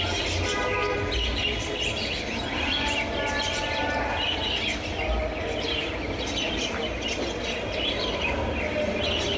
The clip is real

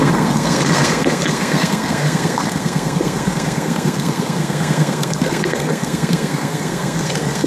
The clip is fake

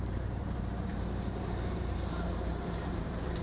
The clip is fake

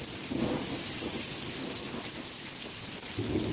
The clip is real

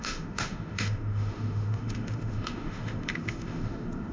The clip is fake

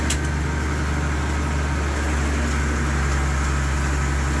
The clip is real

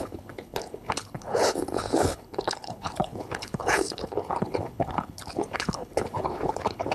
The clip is fake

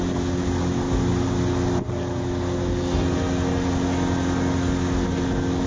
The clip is real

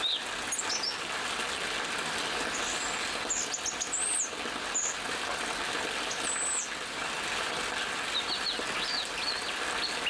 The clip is real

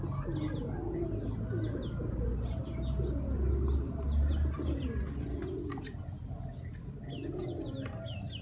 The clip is real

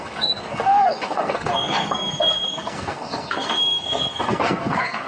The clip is fake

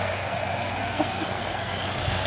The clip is fake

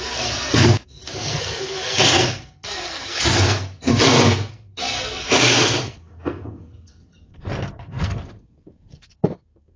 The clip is fake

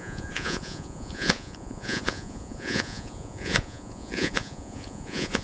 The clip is fake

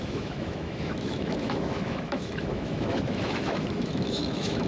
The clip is fake